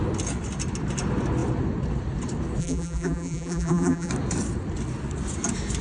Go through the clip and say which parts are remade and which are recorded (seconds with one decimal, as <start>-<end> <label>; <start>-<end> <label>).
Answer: 0.0-2.6 recorded; 2.6-4.1 remade; 4.1-5.8 recorded